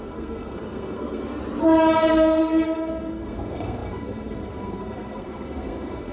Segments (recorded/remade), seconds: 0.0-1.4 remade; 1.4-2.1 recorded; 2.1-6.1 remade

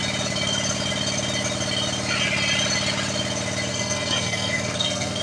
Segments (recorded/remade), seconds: 0.0-3.7 recorded; 3.7-5.2 remade

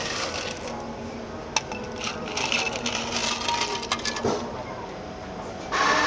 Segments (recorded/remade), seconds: 0.0-2.1 recorded; 2.1-2.8 remade; 2.8-6.1 recorded

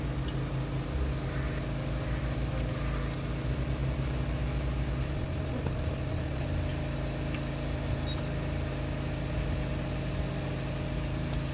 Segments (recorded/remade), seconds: 0.0-11.5 recorded

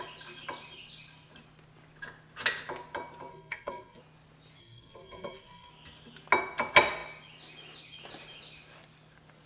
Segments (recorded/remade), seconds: 0.0-3.3 recorded; 3.3-4.0 remade; 4.0-4.6 recorded; 4.6-5.7 remade; 5.7-9.5 recorded

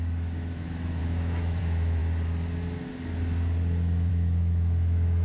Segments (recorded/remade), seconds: 0.0-2.0 remade; 2.0-4.1 recorded; 4.1-5.2 remade

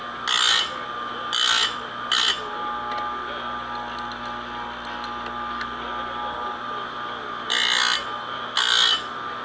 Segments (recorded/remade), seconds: 0.0-9.4 recorded